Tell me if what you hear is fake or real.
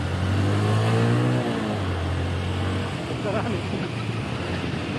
real